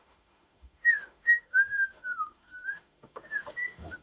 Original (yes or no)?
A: no